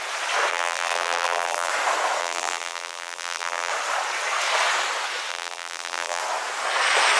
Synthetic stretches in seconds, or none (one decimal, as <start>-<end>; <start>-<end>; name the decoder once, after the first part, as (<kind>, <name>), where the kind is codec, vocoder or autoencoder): 0.5-1.7 (vocoder, BigVGAN v2); 2.2-3.7; 5.3-6.2